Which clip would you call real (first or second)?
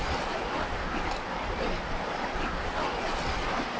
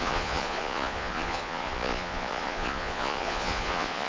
first